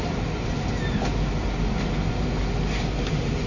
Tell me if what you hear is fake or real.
real